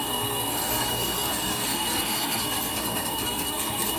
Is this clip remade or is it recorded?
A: remade